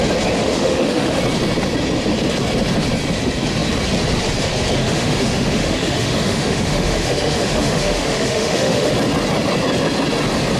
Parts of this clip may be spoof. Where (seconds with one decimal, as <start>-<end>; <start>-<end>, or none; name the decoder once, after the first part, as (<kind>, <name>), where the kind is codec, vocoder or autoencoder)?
0.4-1.2 (autoencoder, DAC-VAE); 4.8-8.9

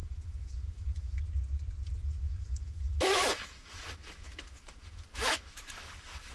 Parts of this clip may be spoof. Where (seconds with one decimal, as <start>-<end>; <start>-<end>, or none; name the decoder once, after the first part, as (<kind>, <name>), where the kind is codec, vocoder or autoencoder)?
0.0-1.2 (autoencoder, DAC-VAE); 2.2-6.3

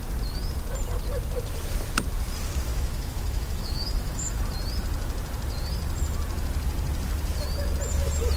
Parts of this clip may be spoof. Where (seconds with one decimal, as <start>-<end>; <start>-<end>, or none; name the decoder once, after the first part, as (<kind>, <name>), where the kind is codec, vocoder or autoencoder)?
2.7-4.4 (autoencoder, DAC-VAE)

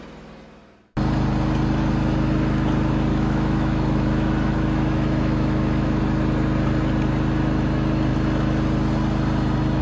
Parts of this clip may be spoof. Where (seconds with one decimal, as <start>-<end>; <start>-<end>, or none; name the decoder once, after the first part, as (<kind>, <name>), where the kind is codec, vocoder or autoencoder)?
3.1-6.0 (autoencoder, DAC-VAE)